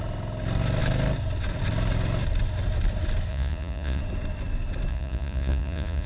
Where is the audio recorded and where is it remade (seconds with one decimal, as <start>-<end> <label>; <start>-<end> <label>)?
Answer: 0.0-3.3 recorded; 3.3-4.0 remade; 4.0-4.9 recorded; 4.9-6.1 remade